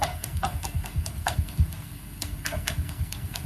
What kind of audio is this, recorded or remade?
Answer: remade